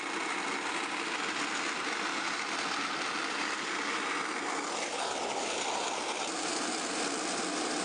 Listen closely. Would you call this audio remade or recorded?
recorded